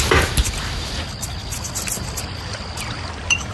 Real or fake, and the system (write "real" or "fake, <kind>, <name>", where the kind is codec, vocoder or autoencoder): real